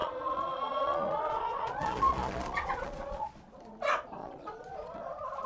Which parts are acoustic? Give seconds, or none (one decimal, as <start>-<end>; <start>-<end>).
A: 3.3-4.2; 5.0-5.5